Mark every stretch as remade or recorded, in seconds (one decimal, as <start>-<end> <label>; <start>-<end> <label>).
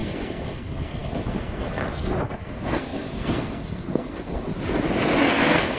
0.0-4.5 remade; 4.5-5.2 recorded; 5.2-5.8 remade